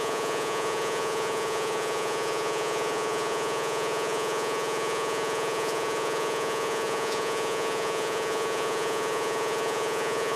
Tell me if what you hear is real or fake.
fake